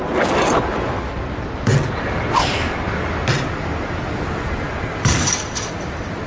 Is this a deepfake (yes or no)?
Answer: no